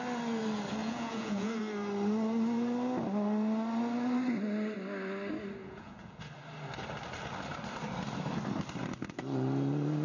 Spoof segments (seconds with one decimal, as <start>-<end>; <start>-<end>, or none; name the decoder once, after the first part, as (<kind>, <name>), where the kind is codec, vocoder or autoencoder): 0.8-1.6 (vocoder, Vocos); 5.6-6.2